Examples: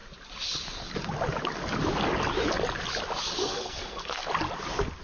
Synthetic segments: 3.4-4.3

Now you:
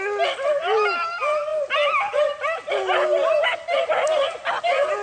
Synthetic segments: none